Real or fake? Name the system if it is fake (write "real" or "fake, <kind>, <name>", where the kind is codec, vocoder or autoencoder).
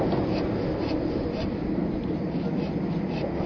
real